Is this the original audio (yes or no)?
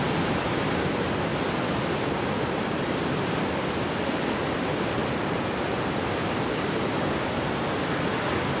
yes